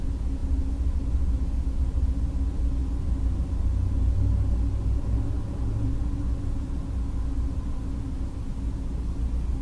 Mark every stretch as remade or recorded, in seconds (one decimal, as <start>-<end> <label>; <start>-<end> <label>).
0.0-9.6 recorded